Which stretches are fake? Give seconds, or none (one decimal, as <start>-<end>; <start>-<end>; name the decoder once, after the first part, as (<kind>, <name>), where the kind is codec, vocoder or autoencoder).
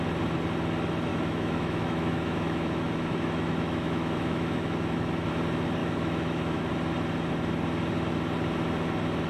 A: 1.1-5.3 (autoencoder, DAC-VAE); 5.8-6.7